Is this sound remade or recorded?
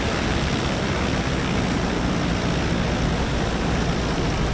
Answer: recorded